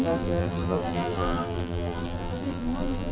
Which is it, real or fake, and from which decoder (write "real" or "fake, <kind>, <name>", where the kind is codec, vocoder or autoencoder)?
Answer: fake, vocoder, BigVGAN v2